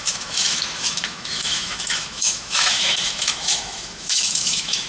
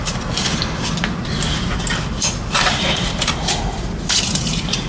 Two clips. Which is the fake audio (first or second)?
first